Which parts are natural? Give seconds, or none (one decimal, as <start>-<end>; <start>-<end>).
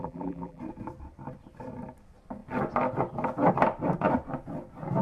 0.6-5.0